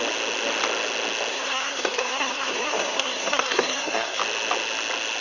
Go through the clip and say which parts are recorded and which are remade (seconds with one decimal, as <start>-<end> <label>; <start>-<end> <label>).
0.0-1.3 recorded; 1.3-4.2 remade; 4.2-5.2 recorded